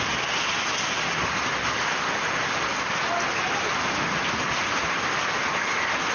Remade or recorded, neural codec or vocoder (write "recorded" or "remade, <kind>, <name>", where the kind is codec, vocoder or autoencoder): recorded